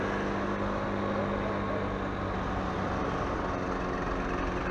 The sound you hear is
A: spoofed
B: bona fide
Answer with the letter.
B